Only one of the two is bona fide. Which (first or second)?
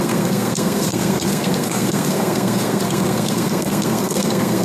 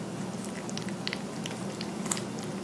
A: second